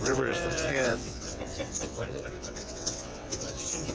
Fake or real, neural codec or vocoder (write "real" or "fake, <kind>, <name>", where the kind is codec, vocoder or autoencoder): fake, vocoder, WaveNeXt